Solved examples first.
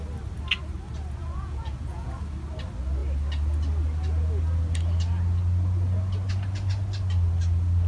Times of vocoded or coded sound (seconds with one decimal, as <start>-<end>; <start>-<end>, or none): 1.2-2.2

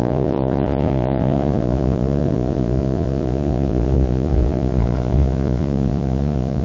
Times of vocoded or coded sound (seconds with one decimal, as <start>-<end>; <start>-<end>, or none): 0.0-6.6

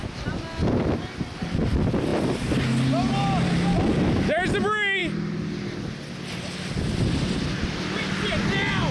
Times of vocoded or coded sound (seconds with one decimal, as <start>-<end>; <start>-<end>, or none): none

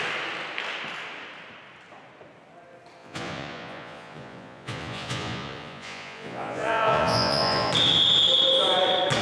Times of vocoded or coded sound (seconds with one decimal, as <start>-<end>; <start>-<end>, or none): 3.0-7.7

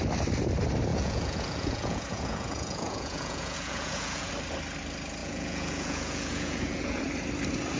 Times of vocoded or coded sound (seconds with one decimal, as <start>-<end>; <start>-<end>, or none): 0.9-4.3; 5.2-7.0